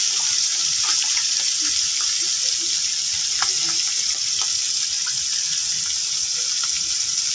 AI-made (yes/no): no